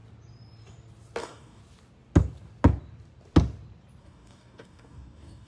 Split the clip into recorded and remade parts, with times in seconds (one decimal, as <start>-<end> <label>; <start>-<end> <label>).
0.0-1.2 recorded; 1.2-1.6 remade; 1.6-4.0 recorded; 4.0-5.5 remade